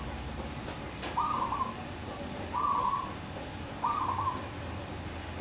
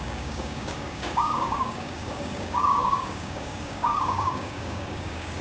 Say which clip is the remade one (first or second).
second